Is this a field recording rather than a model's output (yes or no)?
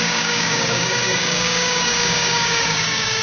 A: no